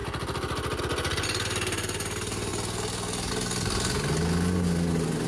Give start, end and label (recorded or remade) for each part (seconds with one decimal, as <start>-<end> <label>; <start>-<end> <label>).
0.0-5.3 recorded